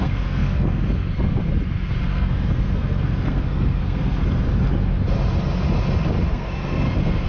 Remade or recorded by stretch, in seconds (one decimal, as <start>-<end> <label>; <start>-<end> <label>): 0.0-1.5 remade; 1.5-2.0 recorded; 2.0-4.2 remade; 4.2-6.3 recorded; 6.3-7.3 remade